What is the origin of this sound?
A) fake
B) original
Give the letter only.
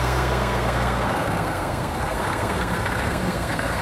A